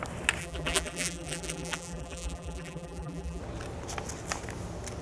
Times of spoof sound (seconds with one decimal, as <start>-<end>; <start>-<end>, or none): 0.4-3.4